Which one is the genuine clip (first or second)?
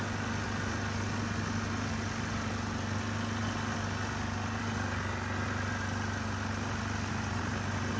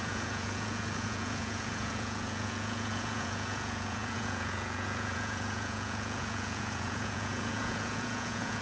first